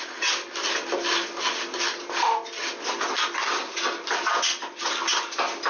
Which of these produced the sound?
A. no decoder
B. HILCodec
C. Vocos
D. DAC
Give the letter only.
A